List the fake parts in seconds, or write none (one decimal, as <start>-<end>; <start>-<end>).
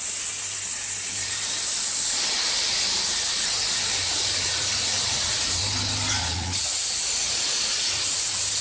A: 4.0-5.6; 6.2-8.2